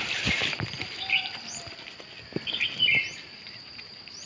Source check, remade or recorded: remade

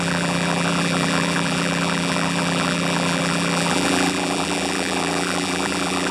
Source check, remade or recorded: remade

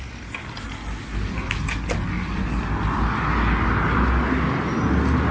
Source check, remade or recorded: recorded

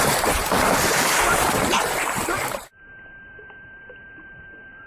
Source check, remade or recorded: remade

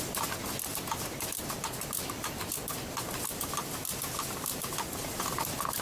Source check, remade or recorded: recorded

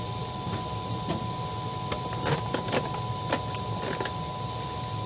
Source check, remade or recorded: recorded